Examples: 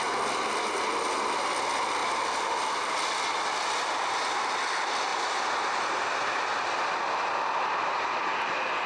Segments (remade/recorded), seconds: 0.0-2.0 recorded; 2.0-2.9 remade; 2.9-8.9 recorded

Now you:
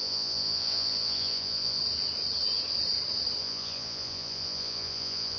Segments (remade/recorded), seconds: 0.0-1.8 remade; 1.8-3.4 recorded; 3.4-5.4 remade

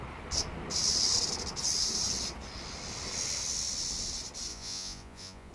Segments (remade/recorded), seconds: 0.0-4.5 recorded; 4.5-5.5 remade

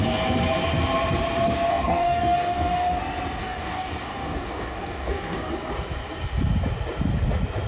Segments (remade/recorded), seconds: 0.0-1.7 recorded; 1.7-3.0 remade; 3.0-3.4 recorded; 3.4-5.5 remade; 5.5-7.7 recorded

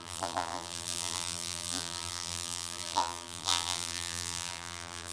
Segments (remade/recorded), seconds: 0.0-5.1 remade

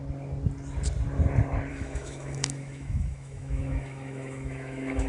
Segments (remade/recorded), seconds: 0.0-1.7 recorded; 1.7-5.1 remade

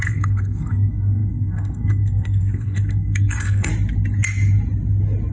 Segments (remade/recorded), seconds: 0.0-3.7 remade; 3.7-5.3 recorded

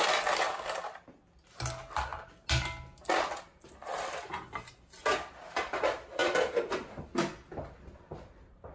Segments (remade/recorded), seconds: 0.0-6.2 recorded; 6.2-6.7 remade; 6.7-8.7 recorded